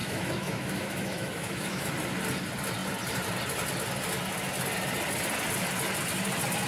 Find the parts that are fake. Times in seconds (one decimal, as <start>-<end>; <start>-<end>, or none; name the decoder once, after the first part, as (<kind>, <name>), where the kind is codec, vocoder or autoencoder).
0.0-1.9 (autoencoder, DAC-VAE)